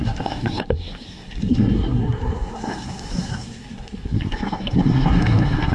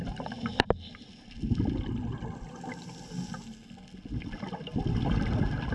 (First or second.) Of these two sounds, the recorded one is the second